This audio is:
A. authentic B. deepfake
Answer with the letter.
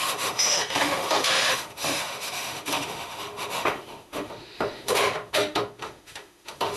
B